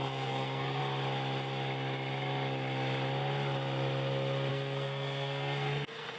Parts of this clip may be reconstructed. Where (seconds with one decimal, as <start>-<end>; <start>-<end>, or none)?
0.0-0.8; 4.5-6.2